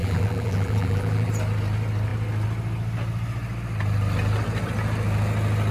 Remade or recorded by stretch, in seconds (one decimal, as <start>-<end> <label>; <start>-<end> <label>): 0.0-1.3 remade; 1.3-5.7 recorded